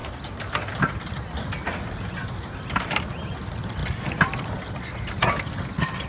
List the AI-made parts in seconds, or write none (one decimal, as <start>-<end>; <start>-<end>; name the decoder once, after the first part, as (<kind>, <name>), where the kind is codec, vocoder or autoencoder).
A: 0.0-1.2 (vocoder, BigVGAN v2); 3.8-4.9